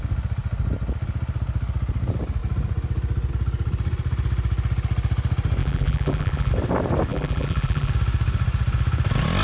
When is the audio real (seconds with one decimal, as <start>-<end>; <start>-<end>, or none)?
0.0-5.6; 6.5-7.1; 7.9-9.4